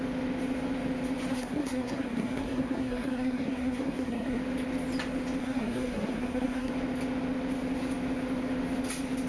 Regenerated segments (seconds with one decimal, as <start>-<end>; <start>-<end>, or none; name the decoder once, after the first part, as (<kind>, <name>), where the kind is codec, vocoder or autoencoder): 1.3-4.4 (codec, SNAC); 5.4-6.7